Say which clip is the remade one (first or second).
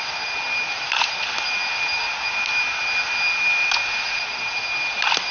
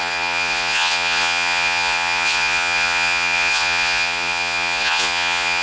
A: second